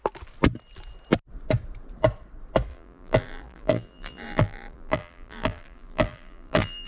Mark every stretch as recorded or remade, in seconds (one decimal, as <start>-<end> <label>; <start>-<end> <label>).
0.0-2.7 recorded; 2.7-6.9 remade